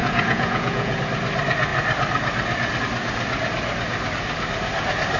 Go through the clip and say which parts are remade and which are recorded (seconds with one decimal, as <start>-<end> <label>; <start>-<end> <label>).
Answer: 0.0-1.0 remade; 1.0-5.2 recorded

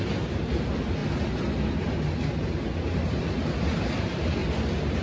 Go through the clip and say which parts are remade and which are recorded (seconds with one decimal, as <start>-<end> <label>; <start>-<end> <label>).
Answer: 0.0-1.0 remade; 1.0-4.0 recorded; 4.0-4.4 remade; 4.4-5.0 recorded